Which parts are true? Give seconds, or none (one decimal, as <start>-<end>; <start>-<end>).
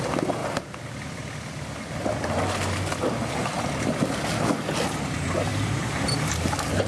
0.0-5.5; 6.5-6.9